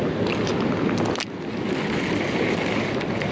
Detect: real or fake real